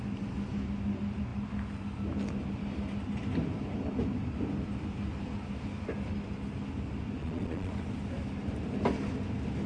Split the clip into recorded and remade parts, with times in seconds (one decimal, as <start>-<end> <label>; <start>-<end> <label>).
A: 0.0-7.2 recorded; 7.2-7.7 remade; 7.7-9.7 recorded